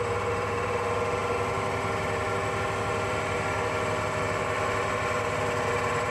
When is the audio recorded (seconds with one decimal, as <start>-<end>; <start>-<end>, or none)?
0.0-6.1